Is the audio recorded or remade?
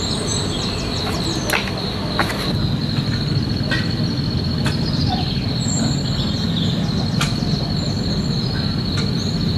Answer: recorded